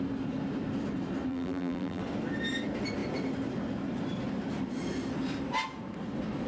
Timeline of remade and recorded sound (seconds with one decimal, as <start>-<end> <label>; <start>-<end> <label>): 0.0-1.3 recorded; 1.3-2.0 remade; 2.0-6.5 recorded